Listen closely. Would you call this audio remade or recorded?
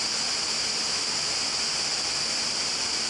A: recorded